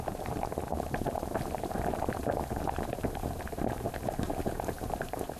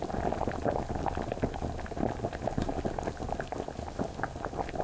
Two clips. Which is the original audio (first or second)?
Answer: second